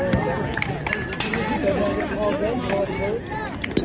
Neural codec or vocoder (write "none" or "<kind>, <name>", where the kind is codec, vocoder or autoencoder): none